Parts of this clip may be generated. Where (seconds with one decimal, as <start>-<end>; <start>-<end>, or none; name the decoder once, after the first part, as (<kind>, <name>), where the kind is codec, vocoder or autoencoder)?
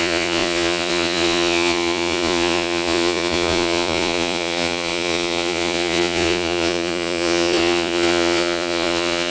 0.0-9.3 (vocoder, Vocos)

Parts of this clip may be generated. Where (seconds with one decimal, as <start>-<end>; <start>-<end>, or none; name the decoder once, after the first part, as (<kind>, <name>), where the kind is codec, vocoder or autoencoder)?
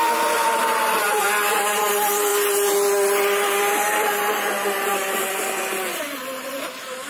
none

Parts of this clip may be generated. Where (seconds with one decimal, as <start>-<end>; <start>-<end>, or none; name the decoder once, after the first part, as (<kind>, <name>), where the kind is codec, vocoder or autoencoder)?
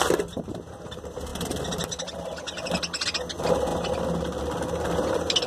none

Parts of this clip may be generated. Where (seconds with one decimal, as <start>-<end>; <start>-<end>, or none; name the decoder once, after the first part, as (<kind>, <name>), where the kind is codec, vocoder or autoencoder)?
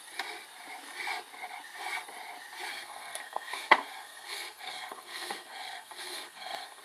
2.7-6.8 (codec, SNAC)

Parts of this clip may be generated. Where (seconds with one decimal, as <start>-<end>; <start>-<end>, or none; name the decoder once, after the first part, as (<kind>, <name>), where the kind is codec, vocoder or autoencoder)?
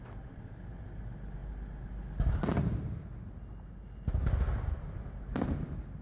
none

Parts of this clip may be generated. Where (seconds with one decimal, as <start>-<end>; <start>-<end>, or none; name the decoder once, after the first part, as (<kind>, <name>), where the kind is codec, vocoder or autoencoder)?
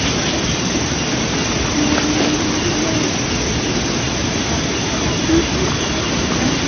none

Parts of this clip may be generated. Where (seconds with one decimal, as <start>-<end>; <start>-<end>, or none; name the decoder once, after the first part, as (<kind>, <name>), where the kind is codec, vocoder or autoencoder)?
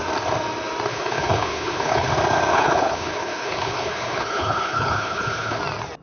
0.9-2.1 (codec, HILCodec); 2.5-5.6